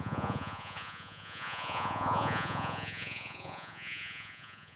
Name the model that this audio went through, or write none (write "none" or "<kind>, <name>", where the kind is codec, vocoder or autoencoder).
vocoder, Vocos